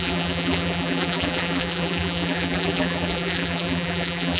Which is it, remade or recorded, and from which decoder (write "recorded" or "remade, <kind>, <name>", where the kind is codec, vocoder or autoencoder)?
remade, vocoder, BigVGAN v2